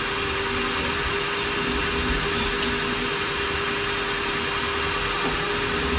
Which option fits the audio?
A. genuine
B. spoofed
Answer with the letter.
A